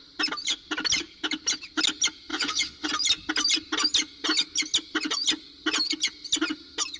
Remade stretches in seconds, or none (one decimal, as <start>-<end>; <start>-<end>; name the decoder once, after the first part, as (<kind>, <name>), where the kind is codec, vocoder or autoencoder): 2.3-2.9 (vocoder, WaveNeXt)

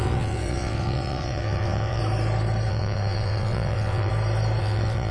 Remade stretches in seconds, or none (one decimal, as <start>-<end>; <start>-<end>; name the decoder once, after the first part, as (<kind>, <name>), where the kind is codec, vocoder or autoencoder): 0.0-2.0 (vocoder, WaveNeXt); 2.7-4.1; 4.6-5.1

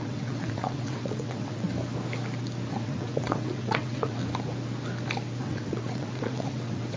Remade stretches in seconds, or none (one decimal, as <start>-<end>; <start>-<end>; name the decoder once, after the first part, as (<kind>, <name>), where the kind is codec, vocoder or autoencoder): 0.0-1.7 (vocoder, WaveNeXt); 2.7-4.2; 5.4-7.0

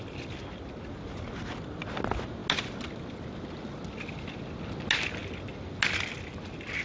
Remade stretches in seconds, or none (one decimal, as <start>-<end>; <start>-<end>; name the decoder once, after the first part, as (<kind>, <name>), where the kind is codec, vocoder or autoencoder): none

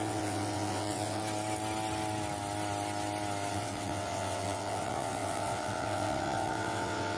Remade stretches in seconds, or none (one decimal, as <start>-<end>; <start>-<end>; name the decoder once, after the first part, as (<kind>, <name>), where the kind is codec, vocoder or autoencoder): 0.0-1.2 (vocoder, WaveNeXt); 3.5-7.2

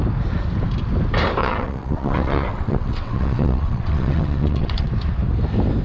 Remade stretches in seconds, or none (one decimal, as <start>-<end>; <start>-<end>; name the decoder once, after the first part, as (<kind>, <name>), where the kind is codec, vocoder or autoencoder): 1.4-4.9 (vocoder, WaveNeXt)